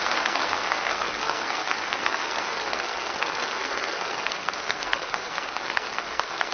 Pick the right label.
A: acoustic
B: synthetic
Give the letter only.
B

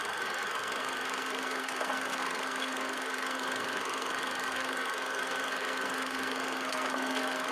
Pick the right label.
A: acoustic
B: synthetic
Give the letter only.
B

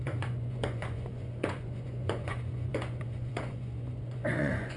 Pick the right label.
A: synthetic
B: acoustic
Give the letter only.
A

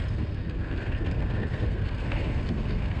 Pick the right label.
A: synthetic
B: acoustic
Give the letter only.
A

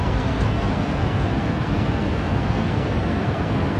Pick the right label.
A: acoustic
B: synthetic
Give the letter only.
B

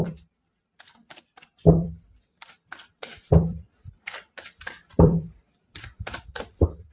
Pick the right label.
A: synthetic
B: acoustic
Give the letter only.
A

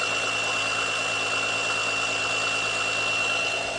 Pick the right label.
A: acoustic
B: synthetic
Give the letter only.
A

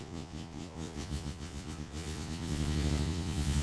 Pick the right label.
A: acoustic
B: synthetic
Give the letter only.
B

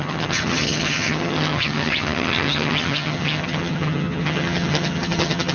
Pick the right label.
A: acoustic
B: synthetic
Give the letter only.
B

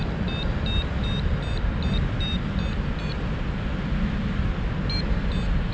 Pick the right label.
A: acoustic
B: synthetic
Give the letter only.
A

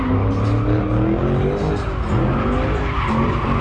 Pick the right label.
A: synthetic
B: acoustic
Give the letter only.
B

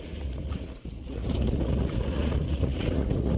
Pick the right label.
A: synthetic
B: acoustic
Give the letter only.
A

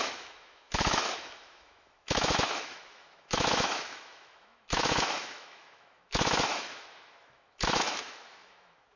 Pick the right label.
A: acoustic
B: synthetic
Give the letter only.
B